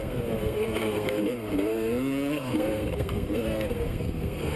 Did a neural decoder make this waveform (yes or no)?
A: yes